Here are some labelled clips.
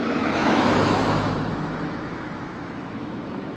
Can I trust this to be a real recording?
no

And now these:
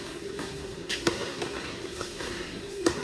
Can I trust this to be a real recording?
no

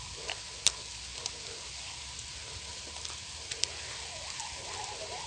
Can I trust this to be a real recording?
yes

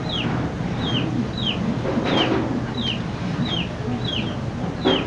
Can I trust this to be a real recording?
yes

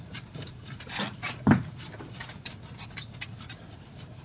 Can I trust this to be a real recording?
yes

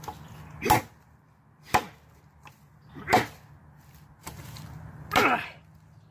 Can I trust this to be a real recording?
yes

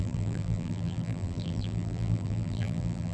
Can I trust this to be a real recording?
no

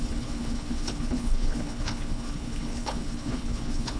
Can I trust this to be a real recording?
no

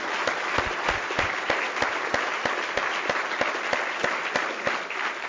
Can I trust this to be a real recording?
yes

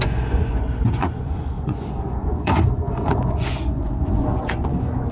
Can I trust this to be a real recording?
no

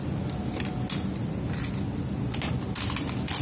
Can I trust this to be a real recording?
yes